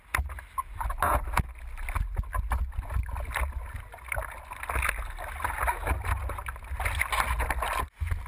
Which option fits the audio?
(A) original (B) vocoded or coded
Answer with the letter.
A